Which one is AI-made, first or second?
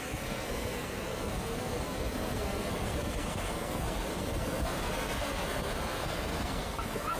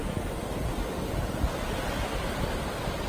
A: first